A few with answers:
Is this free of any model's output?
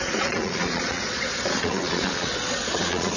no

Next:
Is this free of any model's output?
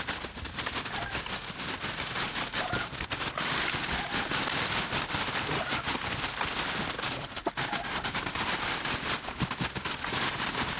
no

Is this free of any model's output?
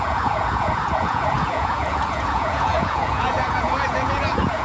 no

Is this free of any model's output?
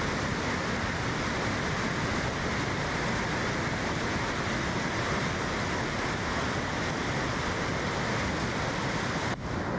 yes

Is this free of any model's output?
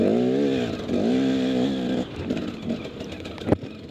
yes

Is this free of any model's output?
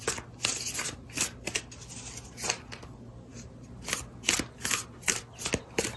yes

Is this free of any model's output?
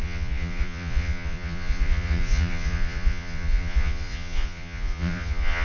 no